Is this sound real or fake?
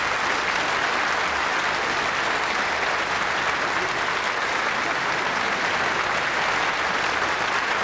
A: real